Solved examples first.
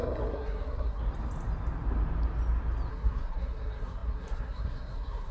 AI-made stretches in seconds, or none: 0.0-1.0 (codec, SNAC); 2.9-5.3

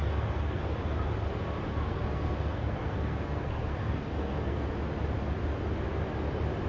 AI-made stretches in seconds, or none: 0.0-0.6 (codec, SNAC); 1.7-4.7

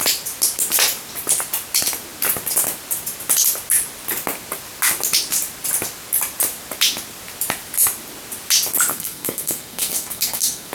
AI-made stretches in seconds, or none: 8.9-10.7 (codec, SNAC)

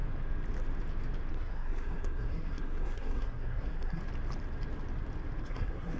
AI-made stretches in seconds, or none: 1.3-4.0 (codec, SNAC); 5.4-6.0

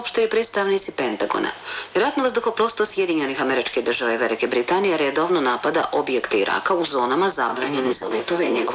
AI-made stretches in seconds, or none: 7.5-8.7 (codec, SNAC)

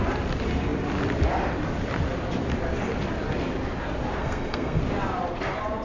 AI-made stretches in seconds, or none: 4.2-4.8 (codec, SNAC)